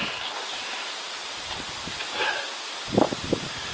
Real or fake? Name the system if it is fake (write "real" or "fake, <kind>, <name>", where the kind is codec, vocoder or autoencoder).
real